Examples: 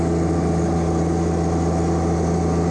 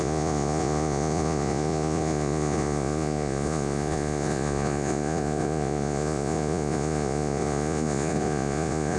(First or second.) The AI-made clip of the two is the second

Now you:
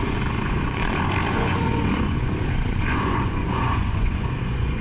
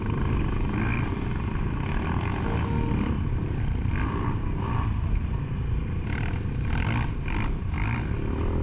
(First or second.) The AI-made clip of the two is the first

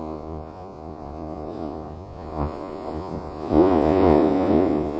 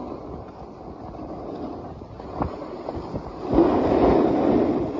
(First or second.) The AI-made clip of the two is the first